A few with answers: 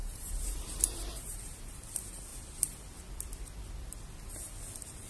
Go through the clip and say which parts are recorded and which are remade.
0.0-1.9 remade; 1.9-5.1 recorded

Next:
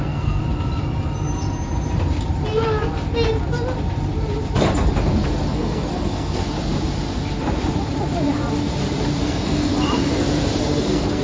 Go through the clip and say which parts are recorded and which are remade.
0.0-0.4 remade; 0.4-5.5 recorded; 5.5-6.4 remade; 6.4-9.2 recorded; 9.2-9.7 remade; 9.7-10.6 recorded; 10.6-11.2 remade

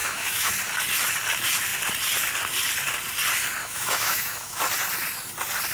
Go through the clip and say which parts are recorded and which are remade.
0.0-0.5 remade; 0.5-3.6 recorded; 3.6-4.6 remade; 4.6-5.7 recorded

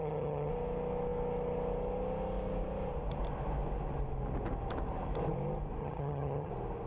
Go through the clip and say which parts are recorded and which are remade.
0.0-0.5 remade; 0.5-5.8 recorded; 5.8-6.5 remade; 6.5-6.9 recorded

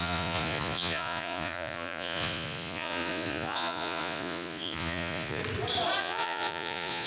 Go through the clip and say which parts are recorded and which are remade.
0.0-5.4 remade; 5.4-6.0 recorded; 6.0-7.1 remade

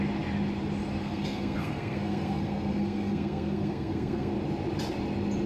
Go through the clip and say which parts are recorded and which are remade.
0.0-1.0 recorded; 1.0-4.3 remade; 4.3-5.5 recorded

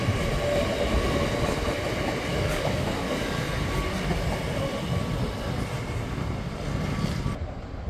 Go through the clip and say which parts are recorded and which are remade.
0.0-2.3 recorded; 2.3-3.4 remade; 3.4-7.9 recorded